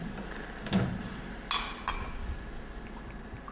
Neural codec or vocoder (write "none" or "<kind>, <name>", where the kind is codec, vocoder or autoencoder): none